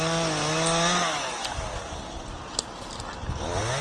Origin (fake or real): real